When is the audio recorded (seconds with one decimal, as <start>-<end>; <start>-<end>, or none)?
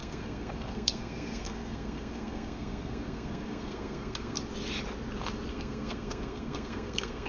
4.4-5.5